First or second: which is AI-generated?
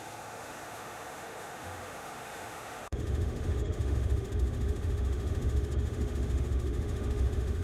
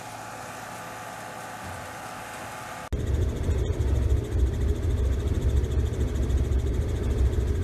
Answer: first